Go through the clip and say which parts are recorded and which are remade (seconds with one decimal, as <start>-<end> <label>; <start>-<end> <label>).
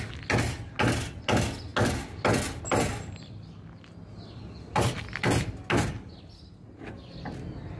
0.0-7.8 recorded